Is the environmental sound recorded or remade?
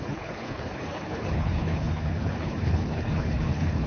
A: remade